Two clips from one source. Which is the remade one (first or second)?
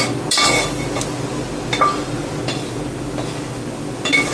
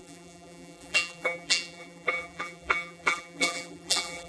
second